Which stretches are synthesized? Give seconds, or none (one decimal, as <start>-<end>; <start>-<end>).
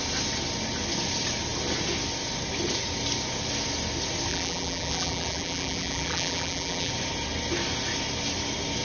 4.3-6.9